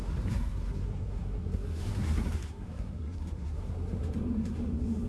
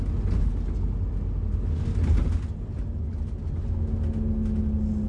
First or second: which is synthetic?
first